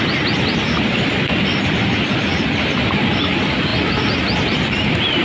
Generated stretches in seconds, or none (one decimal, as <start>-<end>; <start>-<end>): none